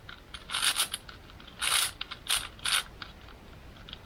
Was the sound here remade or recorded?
recorded